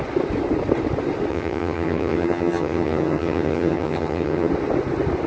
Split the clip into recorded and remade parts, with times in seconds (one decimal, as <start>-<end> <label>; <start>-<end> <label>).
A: 0.0-1.3 recorded; 1.3-4.5 remade; 4.5-5.3 recorded

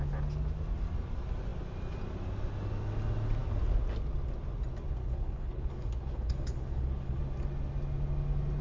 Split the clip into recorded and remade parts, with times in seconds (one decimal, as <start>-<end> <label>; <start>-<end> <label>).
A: 0.0-5.0 recorded; 5.0-7.2 remade; 7.2-8.6 recorded

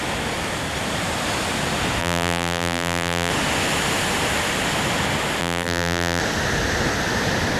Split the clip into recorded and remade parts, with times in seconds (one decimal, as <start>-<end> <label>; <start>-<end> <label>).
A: 0.0-2.0 recorded; 2.0-3.3 remade; 3.3-5.4 recorded; 5.4-6.2 remade; 6.2-7.6 recorded

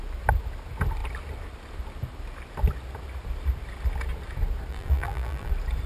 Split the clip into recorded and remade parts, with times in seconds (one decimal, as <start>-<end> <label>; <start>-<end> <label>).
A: 0.0-4.7 recorded; 4.7-5.5 remade; 5.5-5.9 recorded

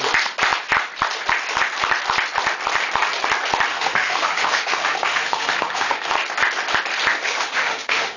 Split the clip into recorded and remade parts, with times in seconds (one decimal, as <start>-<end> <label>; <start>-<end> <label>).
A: 0.0-3.7 recorded; 3.7-6.1 remade; 6.1-7.1 recorded; 7.1-8.2 remade

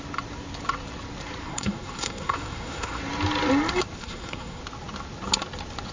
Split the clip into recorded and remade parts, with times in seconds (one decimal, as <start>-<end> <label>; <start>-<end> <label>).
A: 0.0-1.4 recorded; 1.4-3.0 remade; 3.0-4.0 recorded; 4.0-4.6 remade; 4.6-5.9 recorded

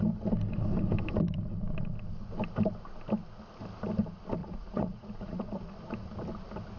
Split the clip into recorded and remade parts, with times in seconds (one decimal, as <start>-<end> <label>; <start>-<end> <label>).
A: 0.0-4.4 recorded; 4.4-5.7 remade; 5.7-6.8 recorded